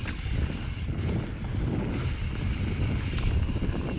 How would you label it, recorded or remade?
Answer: recorded